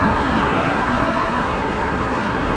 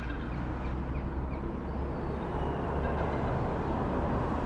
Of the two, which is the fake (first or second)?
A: first